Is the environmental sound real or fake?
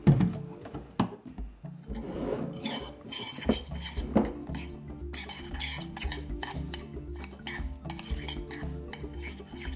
real